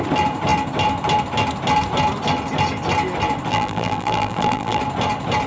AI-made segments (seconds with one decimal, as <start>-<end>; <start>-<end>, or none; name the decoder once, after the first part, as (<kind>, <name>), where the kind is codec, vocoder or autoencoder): 3.5-4.8 (vocoder, BigVGAN v2)